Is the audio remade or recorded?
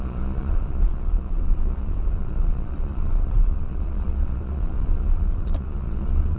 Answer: remade